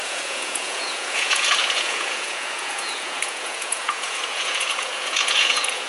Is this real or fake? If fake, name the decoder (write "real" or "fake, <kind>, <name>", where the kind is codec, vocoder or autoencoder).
fake, vocoder, Vocos